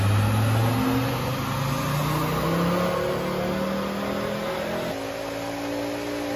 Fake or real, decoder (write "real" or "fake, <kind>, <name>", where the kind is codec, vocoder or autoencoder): real